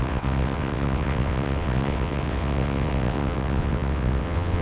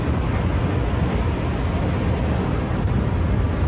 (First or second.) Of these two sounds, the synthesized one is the first